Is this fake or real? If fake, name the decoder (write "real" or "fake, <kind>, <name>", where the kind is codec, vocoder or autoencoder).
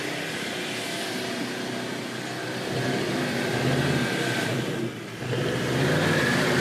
fake, vocoder, BigVGAN v2